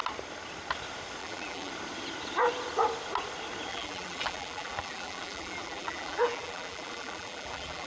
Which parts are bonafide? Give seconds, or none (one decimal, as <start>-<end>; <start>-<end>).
0.0-1.2; 1.7-3.7